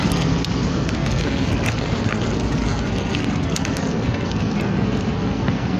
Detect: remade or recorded remade